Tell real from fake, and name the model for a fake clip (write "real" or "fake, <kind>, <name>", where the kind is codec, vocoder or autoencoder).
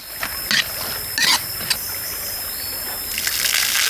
real